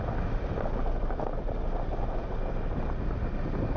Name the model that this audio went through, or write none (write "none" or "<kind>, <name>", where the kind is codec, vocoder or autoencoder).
none